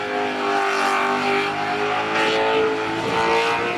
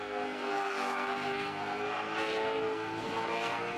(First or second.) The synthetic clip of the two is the second